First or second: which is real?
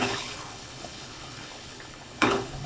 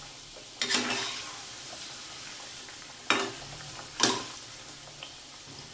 second